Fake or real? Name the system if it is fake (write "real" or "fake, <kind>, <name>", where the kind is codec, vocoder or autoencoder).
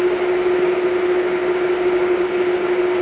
real